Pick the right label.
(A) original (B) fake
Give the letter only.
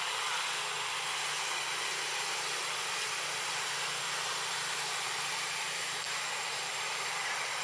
A